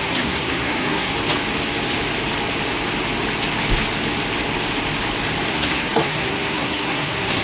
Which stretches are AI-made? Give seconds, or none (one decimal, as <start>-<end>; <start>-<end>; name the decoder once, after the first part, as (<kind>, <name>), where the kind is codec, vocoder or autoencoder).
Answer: 0.0-1.1 (codec, SNAC); 5.5-7.4